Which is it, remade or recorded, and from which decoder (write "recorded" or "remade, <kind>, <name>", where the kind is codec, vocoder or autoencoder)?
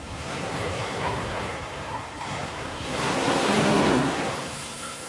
remade, codec, SNAC